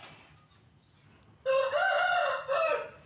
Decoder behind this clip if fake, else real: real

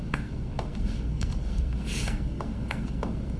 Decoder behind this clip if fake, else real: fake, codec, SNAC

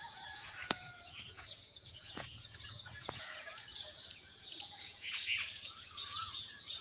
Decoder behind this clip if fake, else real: fake, vocoder, Vocos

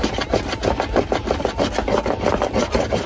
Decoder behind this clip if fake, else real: real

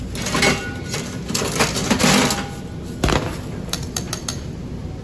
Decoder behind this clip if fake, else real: real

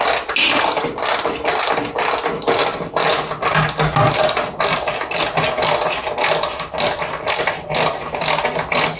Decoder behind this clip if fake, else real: real